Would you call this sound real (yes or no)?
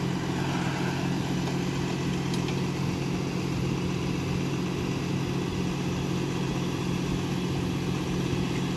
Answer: yes